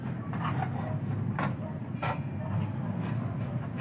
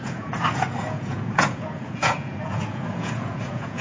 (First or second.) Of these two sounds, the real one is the first